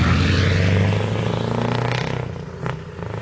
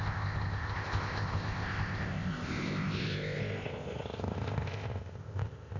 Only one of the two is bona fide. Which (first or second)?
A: first